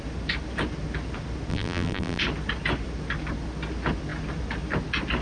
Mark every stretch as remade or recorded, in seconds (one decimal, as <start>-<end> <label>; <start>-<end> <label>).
0.0-1.5 recorded; 1.5-2.2 remade; 2.2-5.2 recorded